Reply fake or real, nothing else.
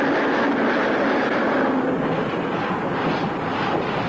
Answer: fake